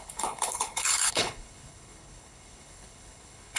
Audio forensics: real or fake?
fake